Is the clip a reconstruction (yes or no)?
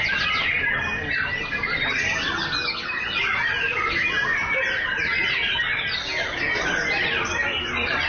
no